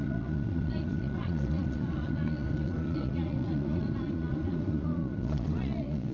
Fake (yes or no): yes